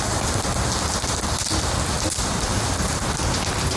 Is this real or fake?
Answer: real